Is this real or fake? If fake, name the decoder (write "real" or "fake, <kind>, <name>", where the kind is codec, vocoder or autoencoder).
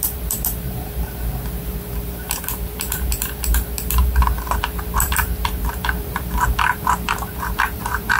fake, vocoder, BigVGAN v2